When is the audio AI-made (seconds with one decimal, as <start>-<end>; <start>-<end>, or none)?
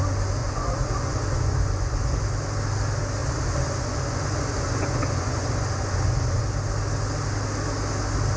0.4-2.2; 3.2-6.4